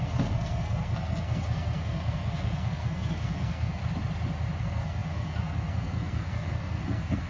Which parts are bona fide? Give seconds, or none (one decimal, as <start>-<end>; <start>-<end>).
3.8-4.6